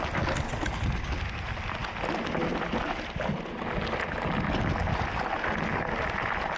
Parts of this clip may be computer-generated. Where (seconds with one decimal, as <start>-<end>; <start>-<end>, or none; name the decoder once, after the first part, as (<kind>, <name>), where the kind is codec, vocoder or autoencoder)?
none